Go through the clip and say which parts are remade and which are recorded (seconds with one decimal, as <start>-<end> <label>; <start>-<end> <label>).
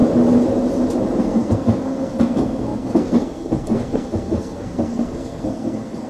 0.0-1.2 recorded; 1.2-6.1 remade